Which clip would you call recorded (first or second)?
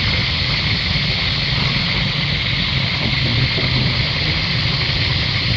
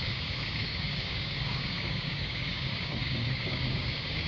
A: first